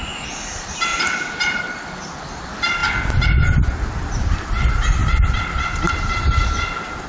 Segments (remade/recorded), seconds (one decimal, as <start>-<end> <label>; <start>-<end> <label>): 0.0-0.9 recorded; 0.9-1.6 remade; 1.6-5.0 recorded; 5.0-6.2 remade; 6.2-7.1 recorded